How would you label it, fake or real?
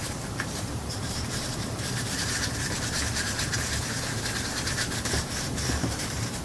fake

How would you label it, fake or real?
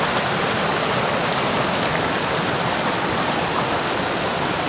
real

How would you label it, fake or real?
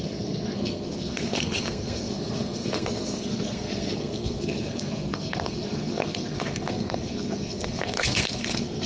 fake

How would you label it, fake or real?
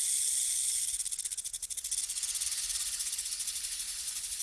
real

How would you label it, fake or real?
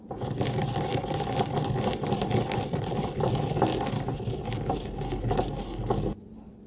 real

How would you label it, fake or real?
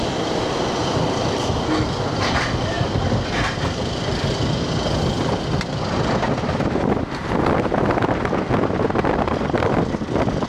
real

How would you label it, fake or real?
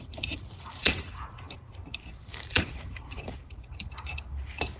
fake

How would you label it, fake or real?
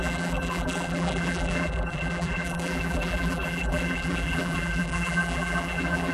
fake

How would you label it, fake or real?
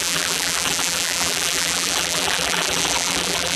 fake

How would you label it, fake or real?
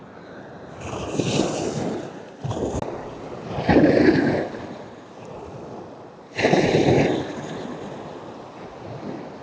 real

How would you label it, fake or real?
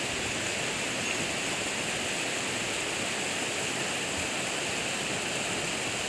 real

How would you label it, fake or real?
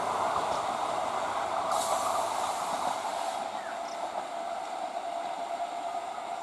real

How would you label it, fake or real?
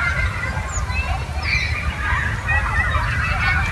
real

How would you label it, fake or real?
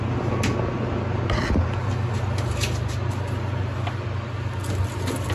real